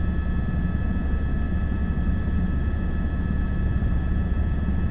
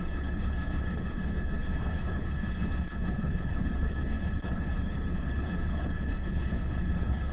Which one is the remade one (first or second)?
second